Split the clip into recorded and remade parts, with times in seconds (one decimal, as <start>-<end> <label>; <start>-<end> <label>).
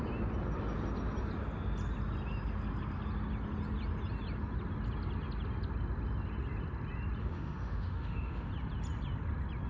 0.0-7.2 recorded; 7.2-8.5 remade; 8.5-9.7 recorded